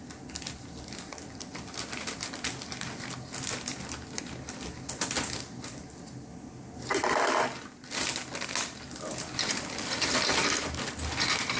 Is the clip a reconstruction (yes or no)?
no